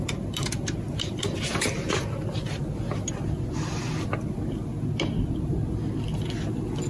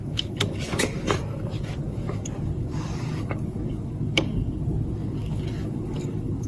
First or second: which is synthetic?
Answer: second